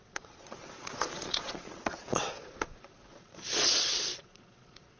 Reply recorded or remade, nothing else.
remade